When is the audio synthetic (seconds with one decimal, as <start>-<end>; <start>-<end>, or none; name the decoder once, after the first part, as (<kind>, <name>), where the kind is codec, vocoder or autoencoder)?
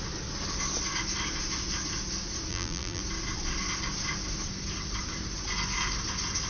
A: 2.5-3.0 (vocoder, BigVGAN v2)